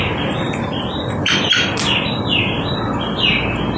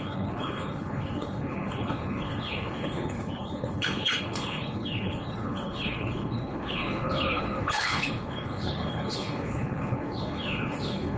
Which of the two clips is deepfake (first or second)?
second